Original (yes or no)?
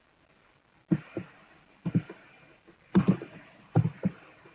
yes